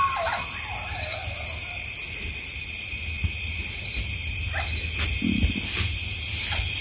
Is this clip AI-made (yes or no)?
no